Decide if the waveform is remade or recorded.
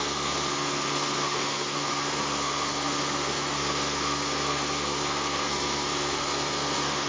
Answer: remade